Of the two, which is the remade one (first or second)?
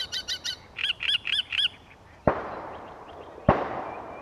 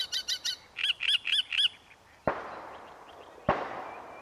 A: first